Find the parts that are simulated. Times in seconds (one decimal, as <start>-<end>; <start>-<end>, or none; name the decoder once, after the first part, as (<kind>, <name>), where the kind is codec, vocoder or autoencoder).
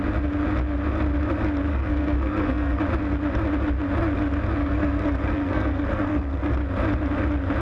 1.7-2.8 (codec, SNAC); 4.6-6.5